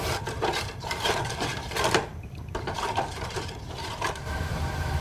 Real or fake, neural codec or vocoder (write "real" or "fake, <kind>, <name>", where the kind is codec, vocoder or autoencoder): fake, vocoder, BigVGAN v2